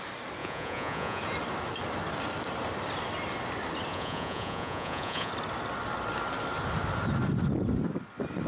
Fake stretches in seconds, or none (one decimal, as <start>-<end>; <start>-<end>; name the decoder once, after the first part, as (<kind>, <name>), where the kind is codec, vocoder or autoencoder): 0.4-1.2 (vocoder, Vocos); 3.9-5.3